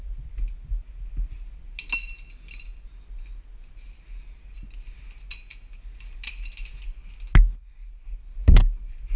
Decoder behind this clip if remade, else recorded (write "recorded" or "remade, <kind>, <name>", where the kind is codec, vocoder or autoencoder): recorded